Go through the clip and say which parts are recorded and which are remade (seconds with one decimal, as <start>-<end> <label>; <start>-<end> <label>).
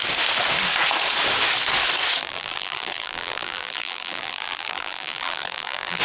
0.0-2.2 recorded; 2.2-6.0 remade